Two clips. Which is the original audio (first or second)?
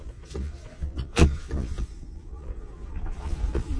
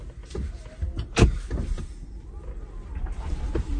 second